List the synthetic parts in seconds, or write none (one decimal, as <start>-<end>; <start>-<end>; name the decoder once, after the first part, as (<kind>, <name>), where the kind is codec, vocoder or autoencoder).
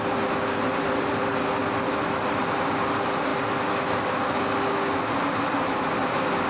none